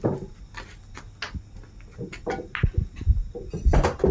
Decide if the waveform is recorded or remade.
recorded